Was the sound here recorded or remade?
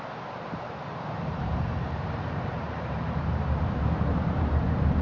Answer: remade